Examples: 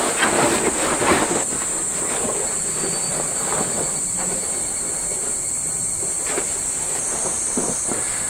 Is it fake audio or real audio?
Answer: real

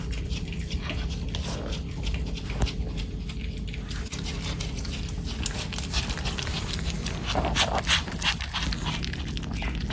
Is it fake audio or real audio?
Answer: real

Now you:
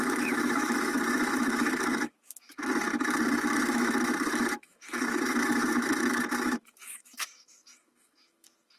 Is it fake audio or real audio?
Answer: fake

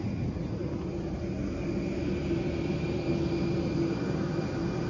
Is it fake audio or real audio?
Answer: real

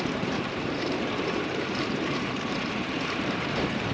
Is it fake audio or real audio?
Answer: fake